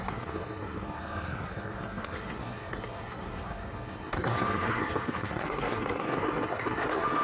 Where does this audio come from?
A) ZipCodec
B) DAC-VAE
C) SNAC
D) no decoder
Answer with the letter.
C